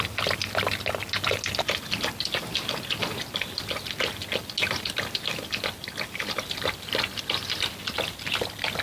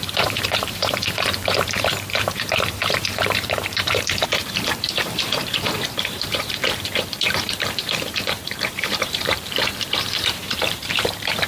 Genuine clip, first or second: first